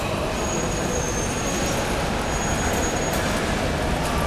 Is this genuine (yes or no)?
yes